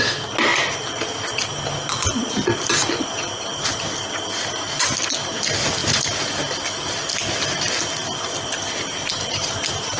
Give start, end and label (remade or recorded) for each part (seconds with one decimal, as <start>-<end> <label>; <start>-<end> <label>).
0.0-10.0 recorded